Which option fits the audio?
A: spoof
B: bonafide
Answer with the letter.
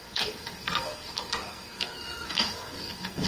A